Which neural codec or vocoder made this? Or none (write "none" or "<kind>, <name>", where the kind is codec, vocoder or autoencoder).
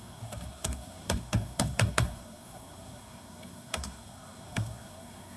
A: codec, SNAC